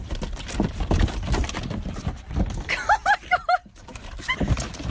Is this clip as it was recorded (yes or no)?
no